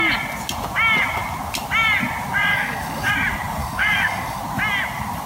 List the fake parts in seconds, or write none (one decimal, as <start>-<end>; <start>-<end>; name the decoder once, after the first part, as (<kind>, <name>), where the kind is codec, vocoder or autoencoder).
2.5-3.1 (codec, DAC); 3.6-4.4